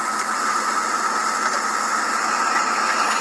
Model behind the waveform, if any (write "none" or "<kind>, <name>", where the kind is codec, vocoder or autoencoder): none